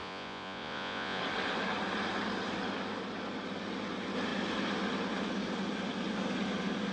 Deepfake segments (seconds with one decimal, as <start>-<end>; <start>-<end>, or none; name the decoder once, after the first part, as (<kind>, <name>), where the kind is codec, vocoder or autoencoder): 0.0-1.2 (vocoder, Vocos)